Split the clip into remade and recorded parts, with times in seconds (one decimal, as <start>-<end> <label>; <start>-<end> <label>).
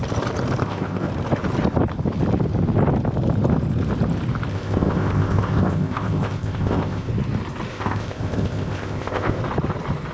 0.0-0.6 recorded; 0.6-1.1 remade; 1.1-4.5 recorded; 4.5-7.1 remade; 7.1-7.7 recorded; 7.7-9.4 remade; 9.4-10.1 recorded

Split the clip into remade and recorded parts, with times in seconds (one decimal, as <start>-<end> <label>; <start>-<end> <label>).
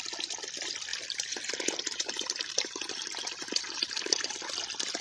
0.0-0.9 recorded; 0.9-3.9 remade; 3.9-5.0 recorded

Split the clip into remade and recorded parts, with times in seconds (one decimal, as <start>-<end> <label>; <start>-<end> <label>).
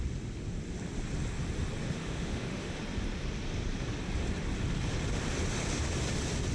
0.0-1.8 recorded; 1.8-2.8 remade; 2.8-6.5 recorded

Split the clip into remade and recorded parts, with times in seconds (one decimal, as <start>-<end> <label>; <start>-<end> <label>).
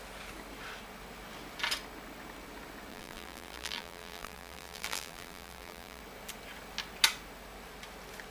0.0-2.9 recorded; 2.9-6.0 remade; 6.0-8.3 recorded